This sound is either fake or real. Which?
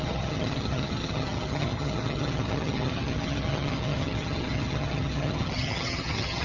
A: fake